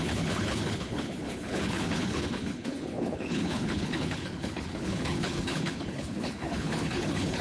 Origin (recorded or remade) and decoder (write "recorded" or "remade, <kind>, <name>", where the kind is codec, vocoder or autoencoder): remade, codec, HILCodec